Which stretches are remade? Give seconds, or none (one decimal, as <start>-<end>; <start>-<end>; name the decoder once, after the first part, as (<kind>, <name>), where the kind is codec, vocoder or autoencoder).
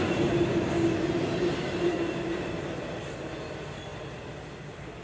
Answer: 3.9-5.0 (vocoder, BigVGAN v2)